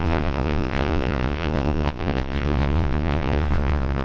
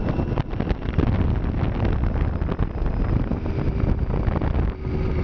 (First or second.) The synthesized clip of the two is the first